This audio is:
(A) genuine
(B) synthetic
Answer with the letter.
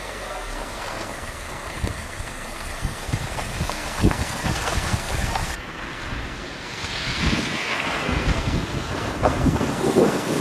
B